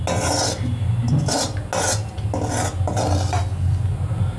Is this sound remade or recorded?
recorded